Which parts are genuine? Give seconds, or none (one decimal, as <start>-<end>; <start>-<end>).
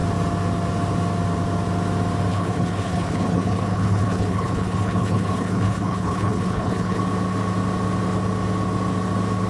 0.0-2.3; 7.0-9.5